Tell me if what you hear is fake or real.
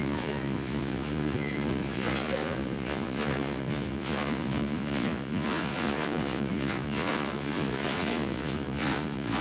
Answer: fake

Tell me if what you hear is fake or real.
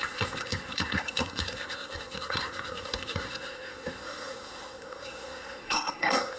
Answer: fake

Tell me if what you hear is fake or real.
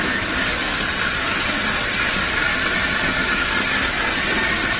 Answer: real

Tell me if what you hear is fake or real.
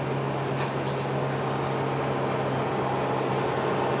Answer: real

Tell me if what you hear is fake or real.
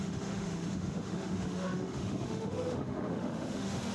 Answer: fake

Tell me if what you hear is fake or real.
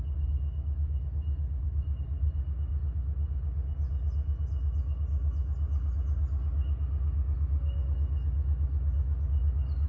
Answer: real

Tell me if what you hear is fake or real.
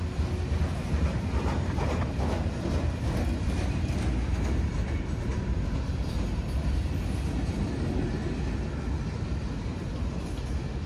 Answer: real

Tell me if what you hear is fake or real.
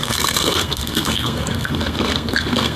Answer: fake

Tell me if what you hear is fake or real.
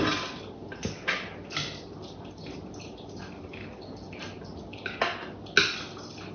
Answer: real